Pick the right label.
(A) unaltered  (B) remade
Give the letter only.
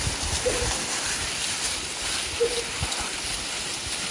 A